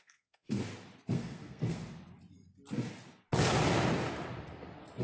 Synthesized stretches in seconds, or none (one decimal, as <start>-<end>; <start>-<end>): 0.0-0.6; 1.1-1.8